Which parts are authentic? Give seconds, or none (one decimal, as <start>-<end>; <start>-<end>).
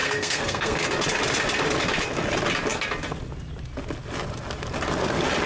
0.9-5.5